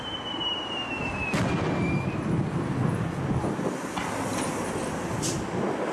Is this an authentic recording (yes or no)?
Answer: yes